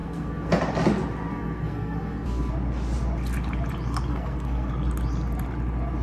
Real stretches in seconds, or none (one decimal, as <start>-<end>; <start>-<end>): 0.6-1.3; 2.5-4.1; 4.7-6.0